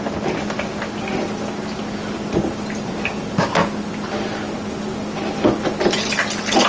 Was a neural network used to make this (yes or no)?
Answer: no